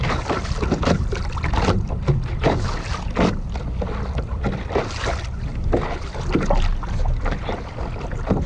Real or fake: real